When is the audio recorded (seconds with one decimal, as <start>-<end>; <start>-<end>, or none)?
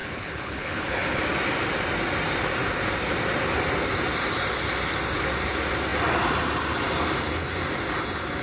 1.2-8.4